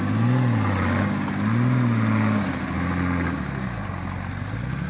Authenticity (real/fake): real